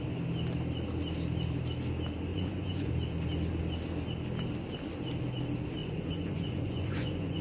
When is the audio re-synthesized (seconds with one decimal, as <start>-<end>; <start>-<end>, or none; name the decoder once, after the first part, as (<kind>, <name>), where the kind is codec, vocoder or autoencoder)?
2.3-2.9 (vocoder, Vocos); 5.8-7.4